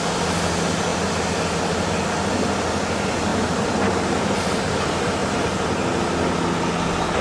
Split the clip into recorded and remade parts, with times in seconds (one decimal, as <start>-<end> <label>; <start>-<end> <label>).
0.0-3.3 recorded; 3.3-4.0 remade; 4.0-5.2 recorded; 5.2-5.7 remade; 5.7-7.2 recorded